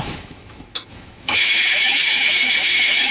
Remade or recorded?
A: remade